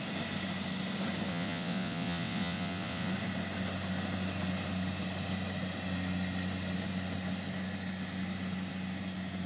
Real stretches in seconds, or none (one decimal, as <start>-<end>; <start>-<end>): 0.0-1.3; 3.1-9.5